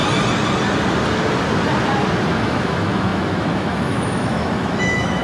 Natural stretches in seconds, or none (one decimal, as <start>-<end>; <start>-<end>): 0.0-2.3

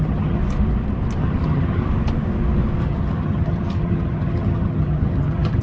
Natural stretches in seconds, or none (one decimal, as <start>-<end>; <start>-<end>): 0.4-1.2; 1.8-2.8

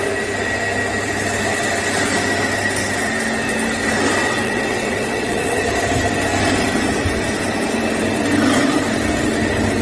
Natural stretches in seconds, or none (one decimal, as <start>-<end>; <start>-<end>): 0.0-4.2; 5.6-9.8

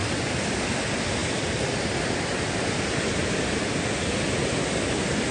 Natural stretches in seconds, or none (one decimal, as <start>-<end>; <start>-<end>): 0.0-5.3